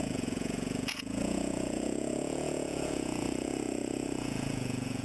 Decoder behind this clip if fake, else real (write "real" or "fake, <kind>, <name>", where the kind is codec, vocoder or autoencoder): fake, vocoder, Vocos